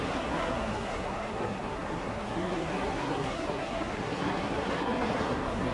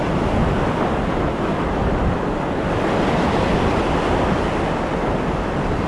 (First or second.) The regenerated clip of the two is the first